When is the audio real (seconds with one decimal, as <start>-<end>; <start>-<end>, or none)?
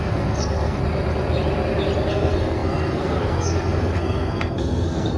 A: 0.8-2.1